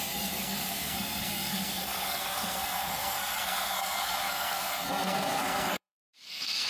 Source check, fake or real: fake